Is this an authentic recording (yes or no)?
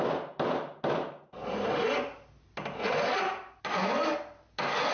yes